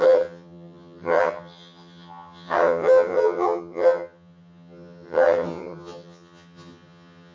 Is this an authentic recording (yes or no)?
no